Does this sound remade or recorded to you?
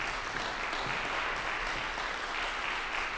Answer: recorded